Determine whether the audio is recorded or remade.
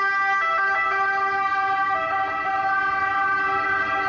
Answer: recorded